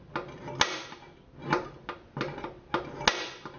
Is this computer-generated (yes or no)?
no